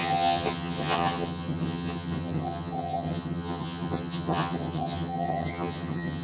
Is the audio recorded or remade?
remade